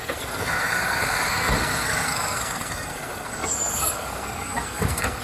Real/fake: fake